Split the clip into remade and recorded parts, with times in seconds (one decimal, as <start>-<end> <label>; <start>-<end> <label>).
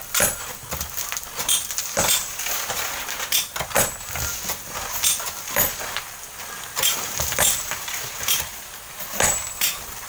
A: 0.0-10.1 recorded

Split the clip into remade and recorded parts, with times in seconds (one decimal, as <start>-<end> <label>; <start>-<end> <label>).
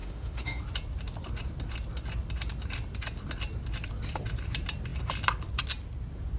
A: 0.0-0.6 remade; 0.6-6.4 recorded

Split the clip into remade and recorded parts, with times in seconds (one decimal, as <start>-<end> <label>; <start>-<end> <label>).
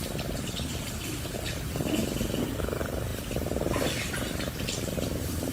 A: 0.0-3.1 recorded; 3.1-3.9 remade; 3.9-5.5 recorded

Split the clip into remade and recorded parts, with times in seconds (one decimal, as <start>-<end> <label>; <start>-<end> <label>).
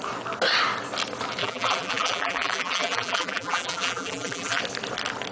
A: 0.0-1.4 recorded; 1.4-4.6 remade; 4.6-5.3 recorded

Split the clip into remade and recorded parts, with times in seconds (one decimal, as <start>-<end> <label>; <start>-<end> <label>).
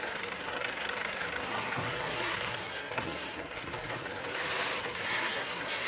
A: 0.0-4.2 remade; 4.2-4.8 recorded; 4.8-5.9 remade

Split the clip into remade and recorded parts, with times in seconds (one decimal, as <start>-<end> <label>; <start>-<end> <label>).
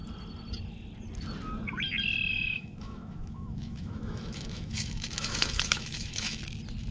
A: 0.0-2.3 recorded; 2.3-6.4 remade; 6.4-6.9 recorded